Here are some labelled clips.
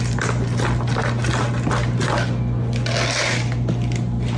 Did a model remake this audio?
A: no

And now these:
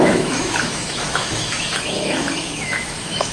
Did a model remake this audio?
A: yes